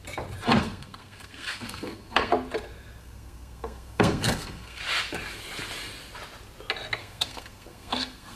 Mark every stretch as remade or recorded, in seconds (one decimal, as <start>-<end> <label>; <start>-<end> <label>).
0.0-0.6 recorded; 0.6-2.3 remade; 2.3-3.0 recorded; 3.0-4.8 remade; 4.8-7.0 recorded; 7.0-8.4 remade